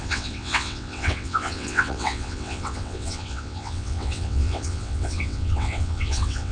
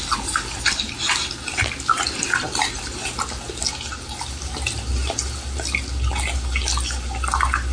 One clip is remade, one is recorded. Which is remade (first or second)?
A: first